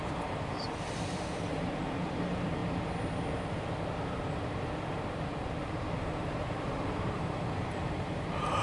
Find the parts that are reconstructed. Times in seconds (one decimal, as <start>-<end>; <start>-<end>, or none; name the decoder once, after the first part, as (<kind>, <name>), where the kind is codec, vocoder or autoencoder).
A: 0.0-2.6 (vocoder, BigVGAN v2); 5.6-8.6